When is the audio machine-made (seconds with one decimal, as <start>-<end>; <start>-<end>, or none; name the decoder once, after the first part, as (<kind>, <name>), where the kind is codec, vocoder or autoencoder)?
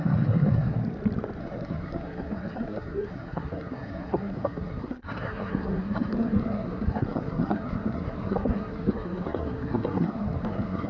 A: 0.0-0.8 (codec, SNAC); 1.4-10.9